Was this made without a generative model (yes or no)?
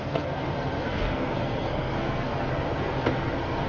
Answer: no